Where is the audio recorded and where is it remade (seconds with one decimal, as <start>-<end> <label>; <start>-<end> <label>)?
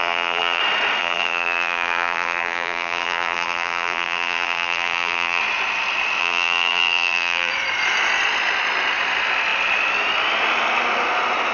0.0-0.6 remade; 0.6-1.0 recorded; 1.0-5.4 remade; 5.4-6.2 recorded; 6.2-7.5 remade; 7.5-11.5 recorded